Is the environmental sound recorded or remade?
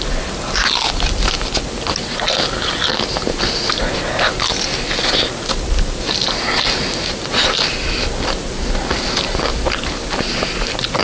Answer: recorded